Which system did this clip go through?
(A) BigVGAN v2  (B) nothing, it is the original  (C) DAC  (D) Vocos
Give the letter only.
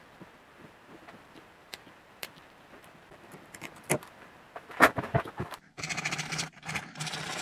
A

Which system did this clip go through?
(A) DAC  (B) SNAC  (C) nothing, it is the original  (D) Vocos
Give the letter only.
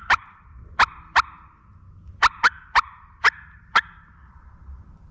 C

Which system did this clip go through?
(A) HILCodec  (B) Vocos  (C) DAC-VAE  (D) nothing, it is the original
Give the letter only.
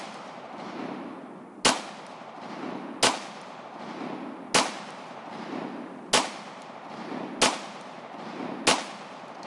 D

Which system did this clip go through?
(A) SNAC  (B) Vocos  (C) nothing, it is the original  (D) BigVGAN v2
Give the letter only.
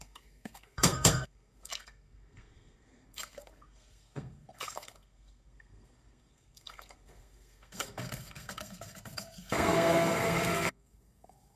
A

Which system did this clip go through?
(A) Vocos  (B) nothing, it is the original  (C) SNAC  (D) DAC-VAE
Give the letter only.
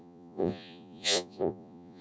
A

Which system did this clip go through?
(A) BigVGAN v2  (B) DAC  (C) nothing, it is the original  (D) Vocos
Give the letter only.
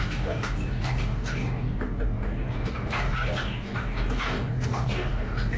B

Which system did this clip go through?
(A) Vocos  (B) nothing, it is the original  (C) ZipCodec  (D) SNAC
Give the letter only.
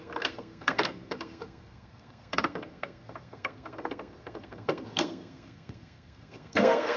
D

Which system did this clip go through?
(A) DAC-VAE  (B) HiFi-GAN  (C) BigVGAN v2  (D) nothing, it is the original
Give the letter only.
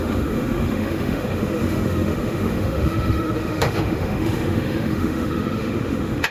A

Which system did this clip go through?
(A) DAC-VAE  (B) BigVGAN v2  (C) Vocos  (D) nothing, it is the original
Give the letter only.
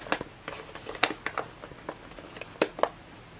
D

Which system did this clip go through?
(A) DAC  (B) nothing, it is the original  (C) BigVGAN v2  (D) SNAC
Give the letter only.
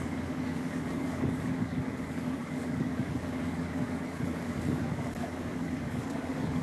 A